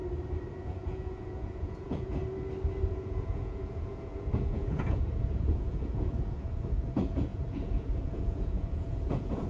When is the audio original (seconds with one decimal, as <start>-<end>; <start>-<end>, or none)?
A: 0.0-0.5; 2.2-2.9